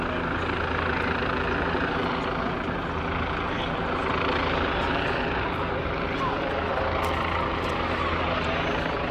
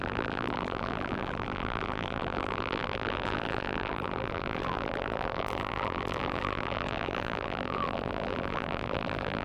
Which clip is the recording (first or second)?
first